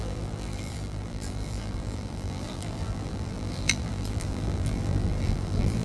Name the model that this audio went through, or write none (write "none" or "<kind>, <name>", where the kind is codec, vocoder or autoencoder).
vocoder, BigVGAN v2